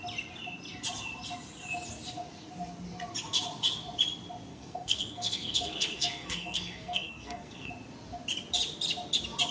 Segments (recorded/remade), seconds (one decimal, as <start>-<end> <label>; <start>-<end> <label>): 0.0-4.5 recorded; 4.5-7.7 remade; 7.7-9.5 recorded